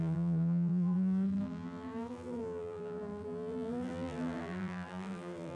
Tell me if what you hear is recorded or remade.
remade